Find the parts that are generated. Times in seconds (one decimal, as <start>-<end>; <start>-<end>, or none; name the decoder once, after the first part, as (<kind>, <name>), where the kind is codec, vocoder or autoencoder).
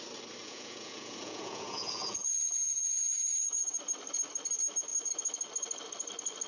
0.4-3.8 (vocoder, Vocos)